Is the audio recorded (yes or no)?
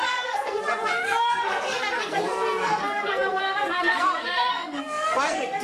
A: no